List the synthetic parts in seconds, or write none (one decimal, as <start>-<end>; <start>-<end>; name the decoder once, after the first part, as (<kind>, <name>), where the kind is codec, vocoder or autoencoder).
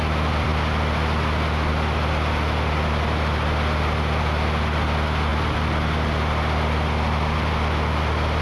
none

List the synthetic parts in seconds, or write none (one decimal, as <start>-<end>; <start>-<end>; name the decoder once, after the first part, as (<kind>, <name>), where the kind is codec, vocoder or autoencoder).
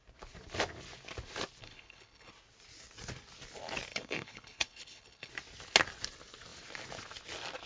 1.6-2.3 (codec, HILCodec); 3.9-5.3